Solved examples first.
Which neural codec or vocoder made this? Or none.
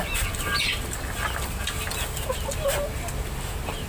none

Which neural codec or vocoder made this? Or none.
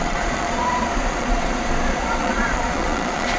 vocoder, Vocos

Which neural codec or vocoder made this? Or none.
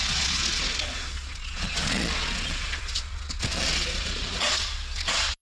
vocoder, Vocos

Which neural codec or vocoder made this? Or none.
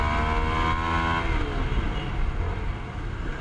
none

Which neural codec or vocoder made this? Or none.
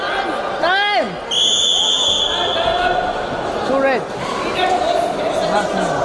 none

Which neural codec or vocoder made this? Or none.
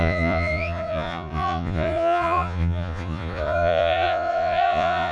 vocoder, Vocos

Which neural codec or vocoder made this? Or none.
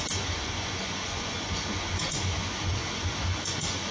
vocoder, Vocos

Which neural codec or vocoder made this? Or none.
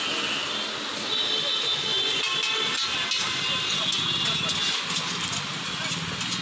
none